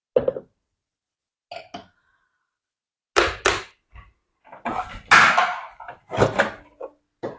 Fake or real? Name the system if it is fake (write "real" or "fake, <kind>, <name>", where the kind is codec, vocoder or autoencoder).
real